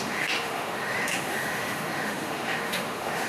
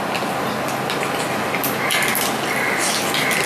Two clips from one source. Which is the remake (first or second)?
first